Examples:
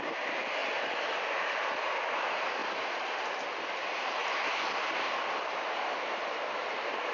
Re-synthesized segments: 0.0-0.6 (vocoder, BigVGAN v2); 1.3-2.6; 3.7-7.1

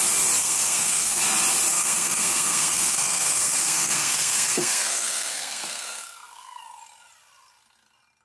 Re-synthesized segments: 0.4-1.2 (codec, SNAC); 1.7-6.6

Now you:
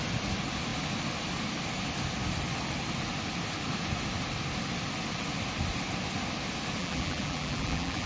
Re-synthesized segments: 6.8-8.1 (vocoder, BigVGAN v2)

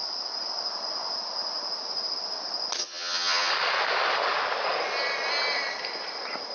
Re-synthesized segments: 2.8-3.5 (vocoder, HiFi-GAN)

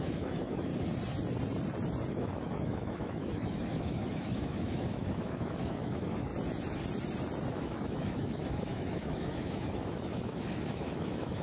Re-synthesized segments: 0.0-0.7 (autoencoder, DAC-VAE); 2.1-6.3; 7.5-11.4

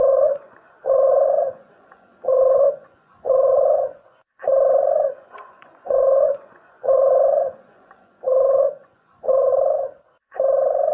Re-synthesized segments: 0.0-9.5 (vocoder, Vocos); 10.2-10.9

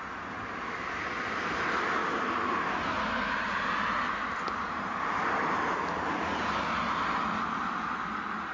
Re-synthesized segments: none